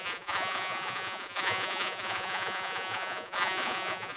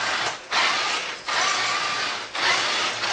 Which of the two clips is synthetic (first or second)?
first